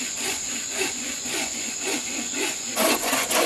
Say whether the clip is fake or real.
fake